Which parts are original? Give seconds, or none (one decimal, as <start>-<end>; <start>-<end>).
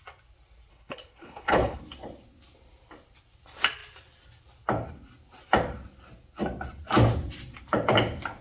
0.0-0.7; 1.8-8.4